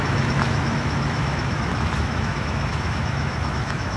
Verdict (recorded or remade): remade